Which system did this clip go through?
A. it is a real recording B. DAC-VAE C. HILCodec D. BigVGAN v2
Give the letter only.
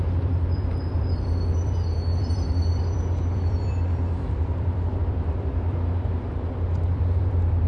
D